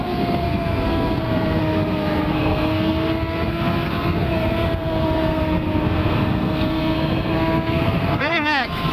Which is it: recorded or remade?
remade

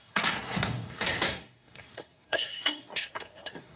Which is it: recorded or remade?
remade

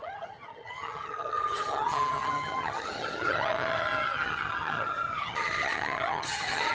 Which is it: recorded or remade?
remade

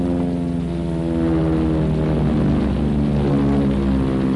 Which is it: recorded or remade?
recorded